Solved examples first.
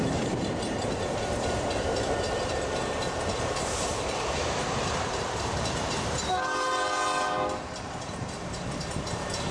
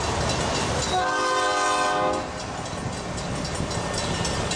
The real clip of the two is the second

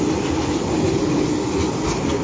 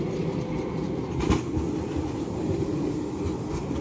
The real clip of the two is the first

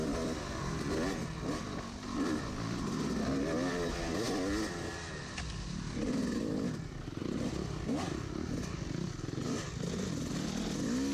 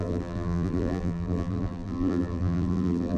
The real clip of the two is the first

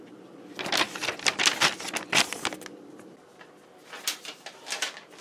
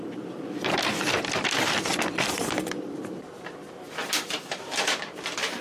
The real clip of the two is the first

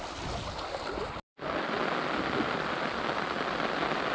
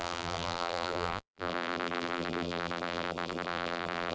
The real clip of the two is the first